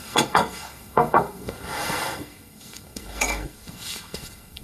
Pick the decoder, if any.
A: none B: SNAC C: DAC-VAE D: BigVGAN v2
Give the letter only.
B